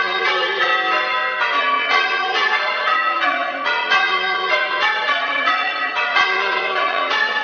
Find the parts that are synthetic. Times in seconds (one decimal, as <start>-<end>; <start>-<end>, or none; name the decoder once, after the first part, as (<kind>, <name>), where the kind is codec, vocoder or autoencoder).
0.0-0.7 (vocoder, Vocos); 1.6-7.4